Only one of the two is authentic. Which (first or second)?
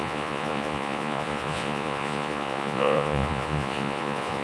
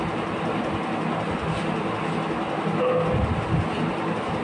second